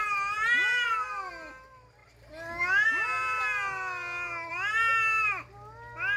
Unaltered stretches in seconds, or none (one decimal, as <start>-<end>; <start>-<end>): 1.3-6.2